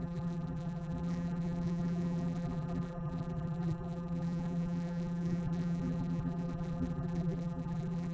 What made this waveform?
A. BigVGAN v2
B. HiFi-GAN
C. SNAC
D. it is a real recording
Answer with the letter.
A